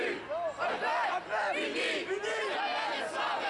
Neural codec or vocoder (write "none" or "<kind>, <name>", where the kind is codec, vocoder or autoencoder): none